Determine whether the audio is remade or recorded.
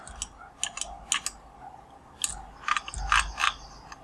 recorded